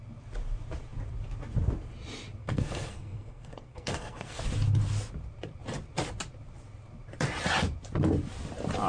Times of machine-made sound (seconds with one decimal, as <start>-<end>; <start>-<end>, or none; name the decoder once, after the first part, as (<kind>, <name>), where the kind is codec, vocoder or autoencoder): 2.4-4.4 (codec, SNAC)